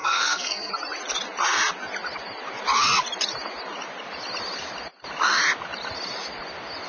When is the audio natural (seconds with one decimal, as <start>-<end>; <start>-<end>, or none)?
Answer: 0.7-6.9